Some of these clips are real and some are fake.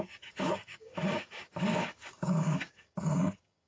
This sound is fake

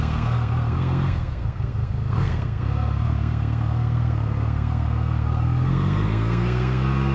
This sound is fake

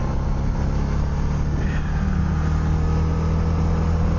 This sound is real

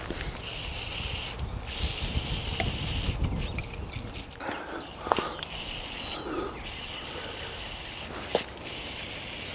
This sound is real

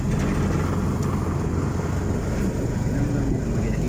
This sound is real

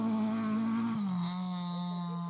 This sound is real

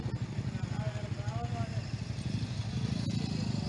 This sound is real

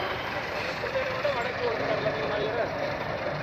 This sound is fake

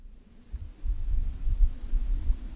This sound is real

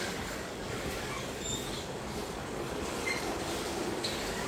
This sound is fake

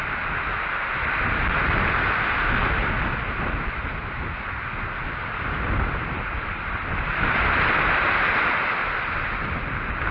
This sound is real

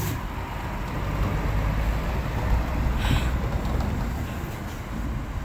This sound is real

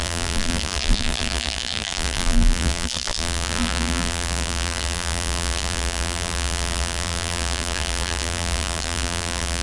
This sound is fake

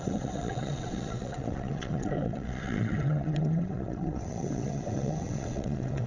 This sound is fake